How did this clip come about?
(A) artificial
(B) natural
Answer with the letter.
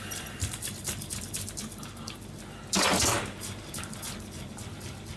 B